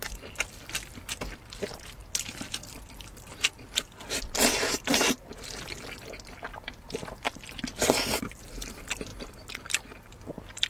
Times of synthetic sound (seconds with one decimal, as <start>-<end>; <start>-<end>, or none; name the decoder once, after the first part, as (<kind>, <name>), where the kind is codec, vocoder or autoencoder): 0.0-2.0 (vocoder, BigVGAN v2); 2.7-3.1; 7.8-9.1